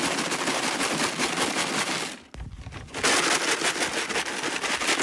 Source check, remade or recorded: recorded